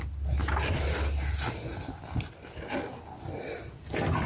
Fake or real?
real